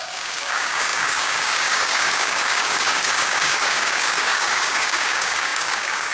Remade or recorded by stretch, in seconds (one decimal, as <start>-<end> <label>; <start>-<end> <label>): 0.0-6.1 remade